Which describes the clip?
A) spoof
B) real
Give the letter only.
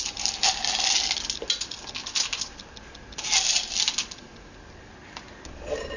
B